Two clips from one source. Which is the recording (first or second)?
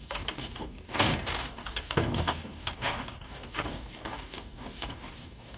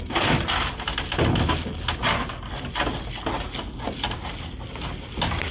second